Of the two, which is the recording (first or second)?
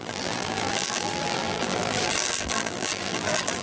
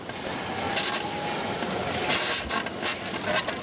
second